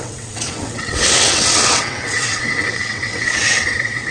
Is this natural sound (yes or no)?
no